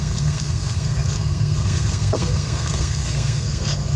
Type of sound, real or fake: fake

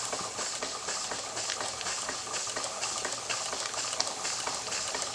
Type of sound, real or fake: real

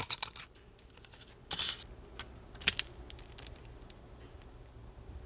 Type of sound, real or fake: real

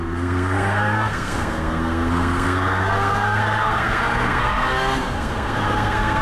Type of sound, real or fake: fake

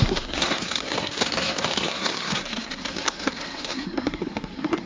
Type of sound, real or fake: fake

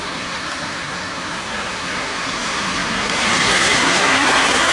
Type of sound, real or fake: fake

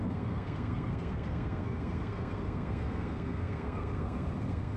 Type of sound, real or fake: fake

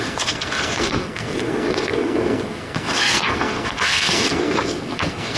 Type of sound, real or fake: fake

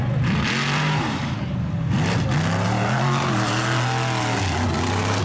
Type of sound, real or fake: real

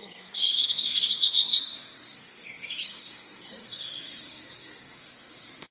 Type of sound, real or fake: fake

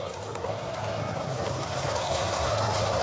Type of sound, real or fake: fake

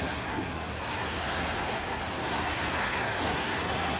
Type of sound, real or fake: fake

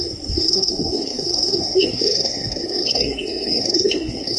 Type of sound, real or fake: fake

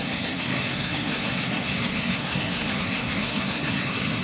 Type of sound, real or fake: fake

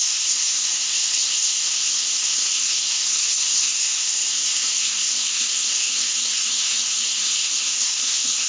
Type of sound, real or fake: fake